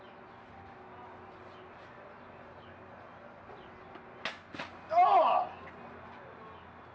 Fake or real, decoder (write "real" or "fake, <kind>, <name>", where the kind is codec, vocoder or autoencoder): real